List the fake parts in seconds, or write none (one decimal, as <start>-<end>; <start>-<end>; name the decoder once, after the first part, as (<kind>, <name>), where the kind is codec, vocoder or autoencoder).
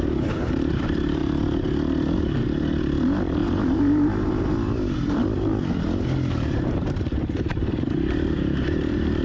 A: 0.0-1.2 (vocoder, BigVGAN v2); 2.8-9.2